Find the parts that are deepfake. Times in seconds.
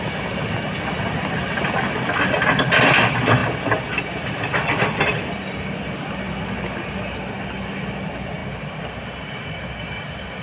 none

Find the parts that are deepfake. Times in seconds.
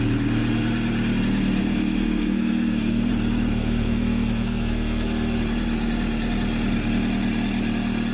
1.6-3.1; 3.5-5.4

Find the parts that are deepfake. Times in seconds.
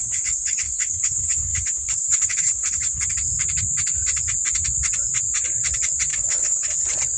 0.0-3.0; 6.1-6.7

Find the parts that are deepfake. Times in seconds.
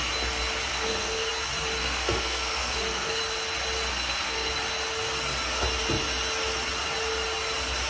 0.7-1.3; 1.8-3.2; 3.9-4.5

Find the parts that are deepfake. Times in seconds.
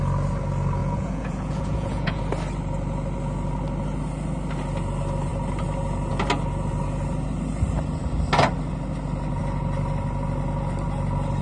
0.8-2.2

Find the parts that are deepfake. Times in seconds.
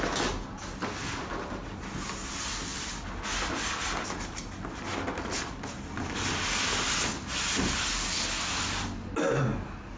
none